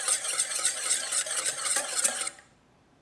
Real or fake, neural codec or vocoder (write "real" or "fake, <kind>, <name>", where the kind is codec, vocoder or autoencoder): fake, vocoder, BigVGAN v2